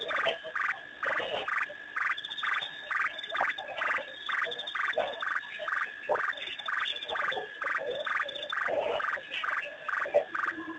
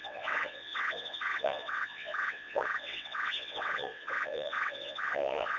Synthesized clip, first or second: second